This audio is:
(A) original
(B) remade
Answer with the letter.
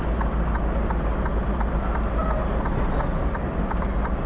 A